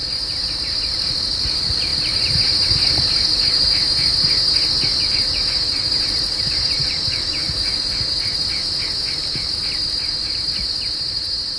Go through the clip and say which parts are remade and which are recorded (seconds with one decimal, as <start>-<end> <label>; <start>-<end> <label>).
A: 0.0-11.6 remade